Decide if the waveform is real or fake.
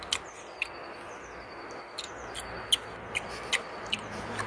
real